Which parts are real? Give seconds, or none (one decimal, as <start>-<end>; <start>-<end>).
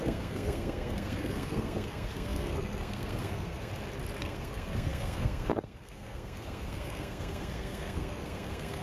3.7-4.2